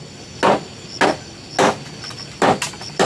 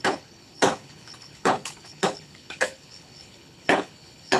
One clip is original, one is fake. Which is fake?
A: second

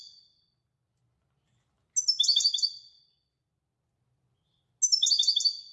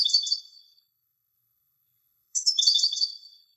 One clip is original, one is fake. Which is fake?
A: second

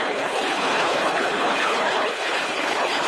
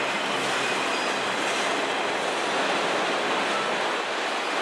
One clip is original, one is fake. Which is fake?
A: first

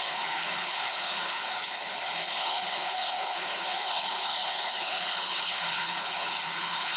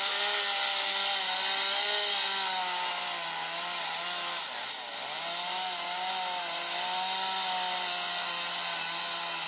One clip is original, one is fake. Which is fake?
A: first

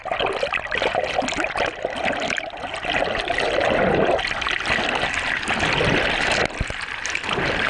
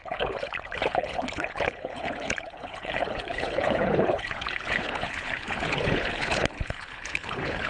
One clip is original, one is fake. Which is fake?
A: second